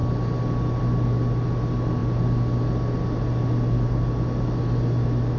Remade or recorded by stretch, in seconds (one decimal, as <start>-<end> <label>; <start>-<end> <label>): 0.0-5.4 recorded